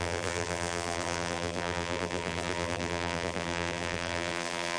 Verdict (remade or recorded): remade